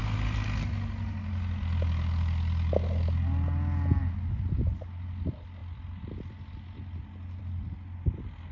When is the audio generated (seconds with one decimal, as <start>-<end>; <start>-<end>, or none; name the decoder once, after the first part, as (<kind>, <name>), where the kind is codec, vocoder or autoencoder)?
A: none